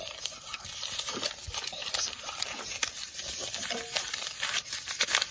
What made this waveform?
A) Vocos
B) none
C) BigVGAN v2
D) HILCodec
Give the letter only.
B